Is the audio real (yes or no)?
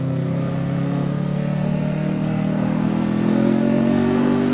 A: no